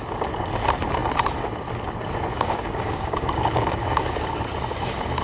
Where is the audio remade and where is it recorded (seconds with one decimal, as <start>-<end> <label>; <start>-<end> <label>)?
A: 0.0-2.3 recorded; 2.3-4.3 remade; 4.3-5.2 recorded